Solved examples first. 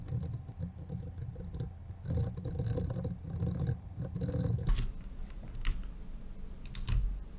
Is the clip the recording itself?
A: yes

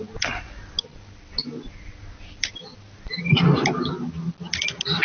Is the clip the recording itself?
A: yes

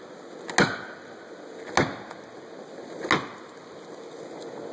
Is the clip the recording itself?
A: yes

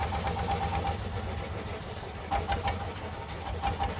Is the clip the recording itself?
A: yes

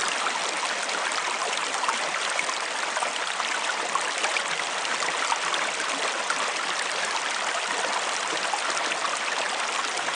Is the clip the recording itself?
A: yes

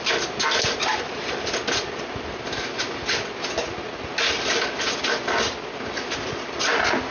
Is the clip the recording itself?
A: yes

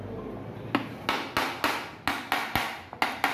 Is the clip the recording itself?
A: yes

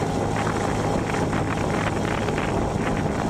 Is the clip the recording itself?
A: yes